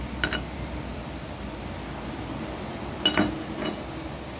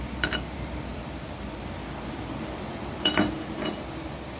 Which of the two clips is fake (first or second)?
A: second